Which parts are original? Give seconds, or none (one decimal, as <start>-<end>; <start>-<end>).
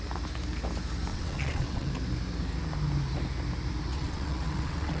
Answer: 0.0-1.1; 1.9-3.9